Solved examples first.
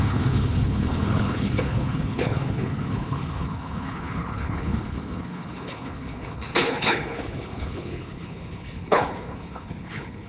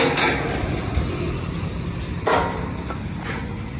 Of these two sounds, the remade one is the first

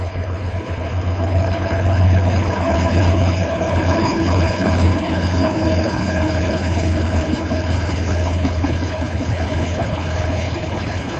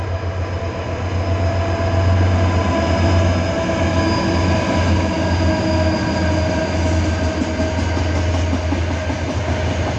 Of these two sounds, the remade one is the first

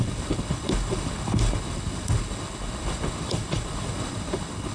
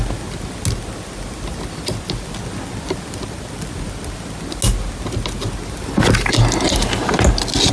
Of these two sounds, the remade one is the first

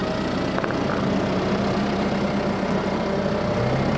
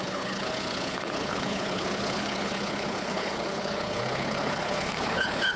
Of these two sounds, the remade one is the second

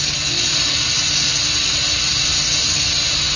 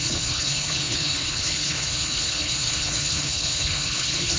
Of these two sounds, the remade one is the second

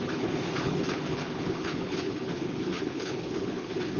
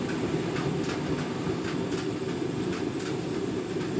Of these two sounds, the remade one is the first